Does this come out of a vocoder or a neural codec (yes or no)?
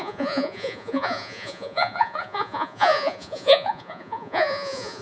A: yes